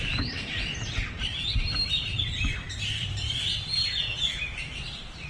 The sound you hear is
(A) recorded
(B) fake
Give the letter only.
B